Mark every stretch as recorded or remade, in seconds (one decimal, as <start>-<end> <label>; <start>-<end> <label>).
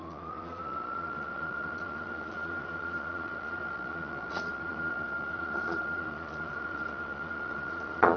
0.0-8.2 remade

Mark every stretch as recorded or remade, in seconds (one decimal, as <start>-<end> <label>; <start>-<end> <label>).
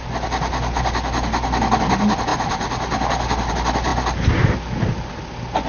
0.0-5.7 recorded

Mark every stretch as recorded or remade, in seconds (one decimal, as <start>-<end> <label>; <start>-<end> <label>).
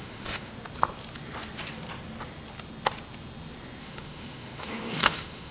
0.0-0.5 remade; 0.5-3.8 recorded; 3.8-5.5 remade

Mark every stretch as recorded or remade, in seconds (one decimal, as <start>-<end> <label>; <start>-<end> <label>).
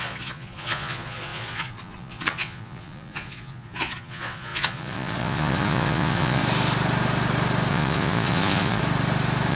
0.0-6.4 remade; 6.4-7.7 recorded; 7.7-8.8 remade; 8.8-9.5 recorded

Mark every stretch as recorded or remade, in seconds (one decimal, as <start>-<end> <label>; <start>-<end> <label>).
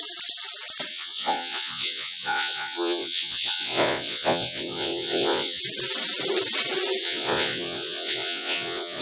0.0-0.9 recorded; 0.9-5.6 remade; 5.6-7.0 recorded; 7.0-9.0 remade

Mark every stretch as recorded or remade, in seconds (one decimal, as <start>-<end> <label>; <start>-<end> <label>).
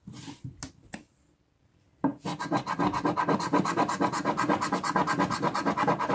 0.0-6.1 recorded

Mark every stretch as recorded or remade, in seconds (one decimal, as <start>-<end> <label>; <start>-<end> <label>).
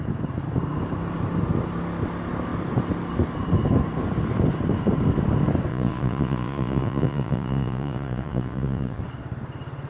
0.0-5.7 recorded; 5.7-9.0 remade; 9.0-9.9 recorded